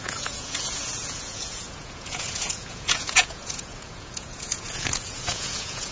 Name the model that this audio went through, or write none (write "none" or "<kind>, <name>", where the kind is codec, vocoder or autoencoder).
vocoder, Vocos